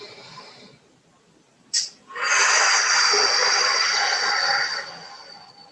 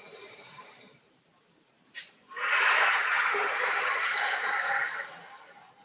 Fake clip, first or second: second